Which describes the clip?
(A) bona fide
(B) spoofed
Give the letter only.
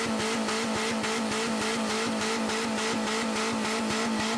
A